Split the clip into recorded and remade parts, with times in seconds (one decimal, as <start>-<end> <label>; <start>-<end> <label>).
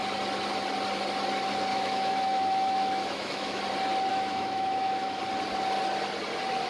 0.0-1.7 recorded; 1.7-3.6 remade; 3.6-4.1 recorded; 4.1-5.2 remade; 5.2-6.7 recorded